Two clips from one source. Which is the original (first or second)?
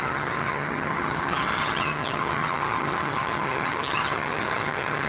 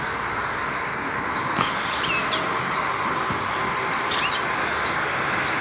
second